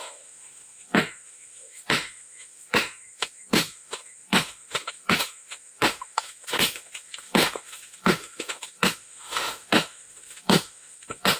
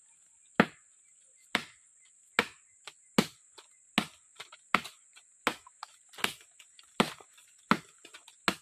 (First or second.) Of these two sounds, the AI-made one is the first